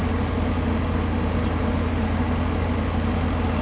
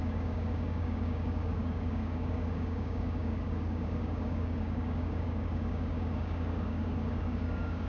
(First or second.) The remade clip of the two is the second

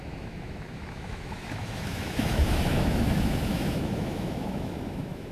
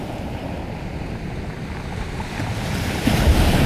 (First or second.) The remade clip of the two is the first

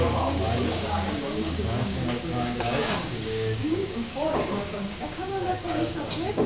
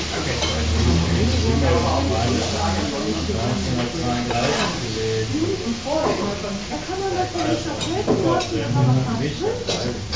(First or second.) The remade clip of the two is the first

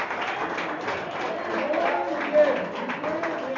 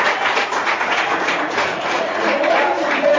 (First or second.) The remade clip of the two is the second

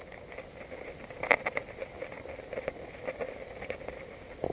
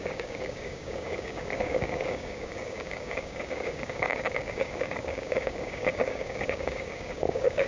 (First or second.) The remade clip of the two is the second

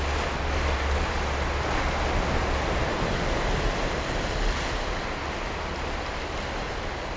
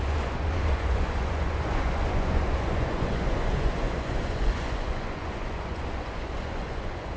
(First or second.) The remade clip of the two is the second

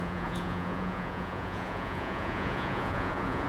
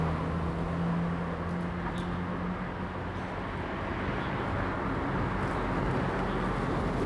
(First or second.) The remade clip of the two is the first